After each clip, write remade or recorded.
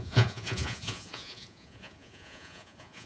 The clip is remade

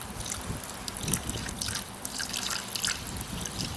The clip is recorded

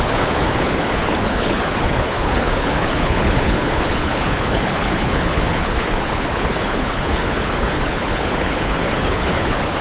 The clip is remade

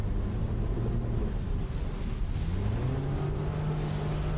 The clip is recorded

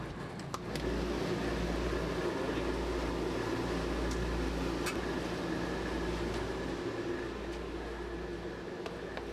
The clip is recorded